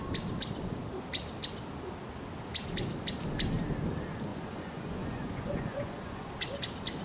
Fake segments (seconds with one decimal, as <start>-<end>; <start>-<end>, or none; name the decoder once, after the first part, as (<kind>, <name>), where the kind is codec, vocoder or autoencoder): 4.3-6.3 (vocoder, Vocos)